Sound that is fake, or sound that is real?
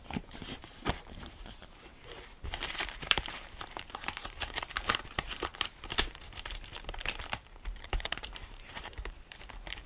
fake